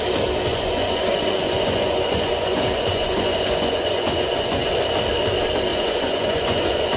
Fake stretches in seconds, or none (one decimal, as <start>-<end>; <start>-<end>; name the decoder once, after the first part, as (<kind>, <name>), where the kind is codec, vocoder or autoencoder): 0.5-4.7 (vocoder, Vocos); 5.7-7.0